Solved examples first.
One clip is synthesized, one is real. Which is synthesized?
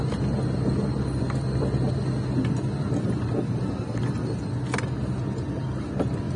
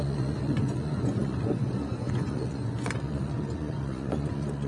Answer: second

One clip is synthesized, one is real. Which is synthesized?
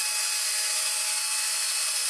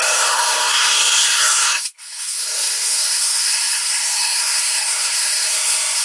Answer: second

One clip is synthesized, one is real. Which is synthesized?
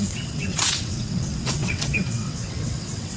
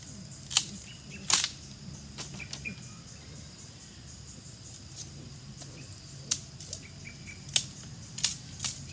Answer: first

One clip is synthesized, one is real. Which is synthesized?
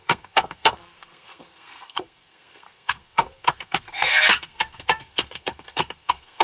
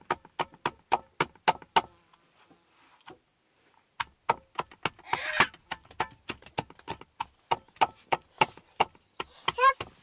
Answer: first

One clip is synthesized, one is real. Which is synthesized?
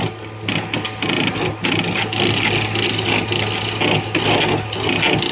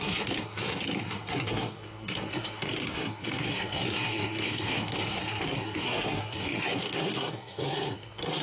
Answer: second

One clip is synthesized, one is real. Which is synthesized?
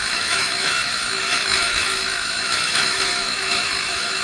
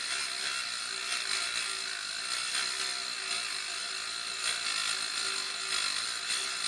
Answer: first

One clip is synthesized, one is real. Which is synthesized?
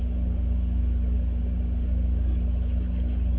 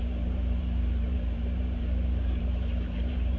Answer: second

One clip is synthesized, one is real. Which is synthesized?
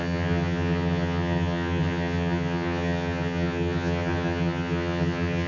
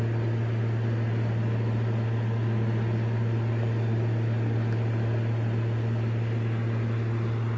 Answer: first